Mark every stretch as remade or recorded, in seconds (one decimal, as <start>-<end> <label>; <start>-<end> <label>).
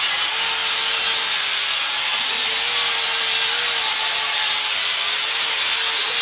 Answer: 0.0-6.2 recorded